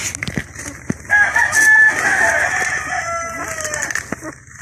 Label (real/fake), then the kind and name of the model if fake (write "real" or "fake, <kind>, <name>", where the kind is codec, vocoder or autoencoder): real